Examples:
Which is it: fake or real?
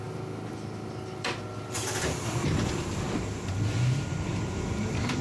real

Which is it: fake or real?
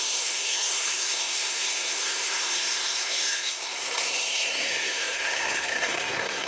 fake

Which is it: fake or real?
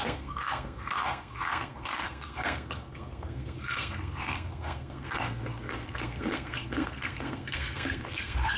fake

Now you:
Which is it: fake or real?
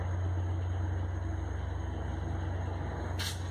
real